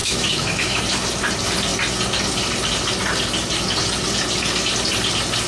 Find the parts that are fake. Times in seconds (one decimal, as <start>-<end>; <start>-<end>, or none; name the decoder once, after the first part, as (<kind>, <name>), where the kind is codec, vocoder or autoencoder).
0.0-0.8 (autoencoder, DAC-VAE)